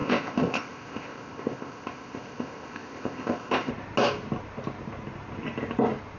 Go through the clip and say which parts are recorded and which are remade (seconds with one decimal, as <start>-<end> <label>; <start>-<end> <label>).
0.0-3.7 remade; 3.7-6.2 recorded